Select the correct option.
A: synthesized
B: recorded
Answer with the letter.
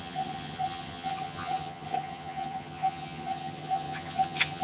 A